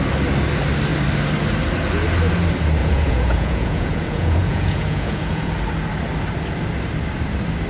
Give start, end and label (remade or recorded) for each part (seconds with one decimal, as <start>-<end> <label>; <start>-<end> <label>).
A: 0.0-2.8 recorded; 2.8-5.5 remade; 5.5-7.7 recorded

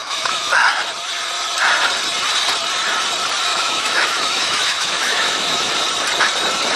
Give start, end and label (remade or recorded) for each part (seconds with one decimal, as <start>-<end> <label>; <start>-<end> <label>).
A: 0.0-0.5 remade; 0.5-3.5 recorded; 3.5-5.7 remade; 5.7-6.8 recorded

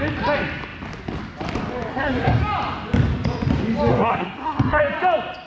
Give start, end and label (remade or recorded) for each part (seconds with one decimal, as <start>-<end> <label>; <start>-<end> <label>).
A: 0.0-1.9 recorded; 1.9-2.4 remade; 2.4-3.9 recorded; 3.9-4.8 remade; 4.8-5.5 recorded

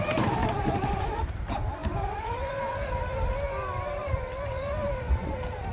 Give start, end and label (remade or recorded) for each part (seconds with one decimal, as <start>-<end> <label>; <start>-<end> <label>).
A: 0.0-5.7 recorded

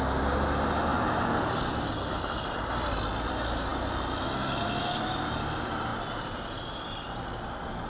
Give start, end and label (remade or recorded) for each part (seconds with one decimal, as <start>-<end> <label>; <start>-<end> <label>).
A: 0.0-5.9 recorded; 5.9-7.2 remade; 7.2-7.9 recorded